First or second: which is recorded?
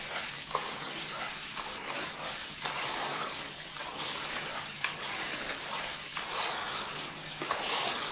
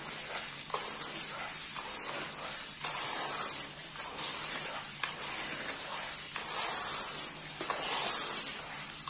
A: second